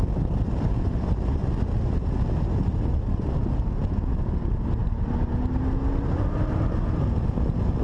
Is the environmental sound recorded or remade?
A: recorded